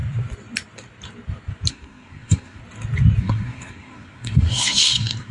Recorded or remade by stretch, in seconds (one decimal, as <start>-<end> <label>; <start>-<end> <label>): 0.0-1.7 recorded; 1.7-2.6 remade; 2.6-3.2 recorded; 3.2-5.3 remade